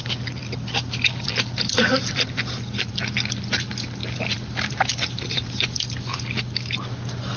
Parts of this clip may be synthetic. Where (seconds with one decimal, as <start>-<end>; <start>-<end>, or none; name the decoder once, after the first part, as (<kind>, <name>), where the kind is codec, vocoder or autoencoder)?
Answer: 0.4-2.9 (vocoder, BigVGAN v2); 4.0-6.4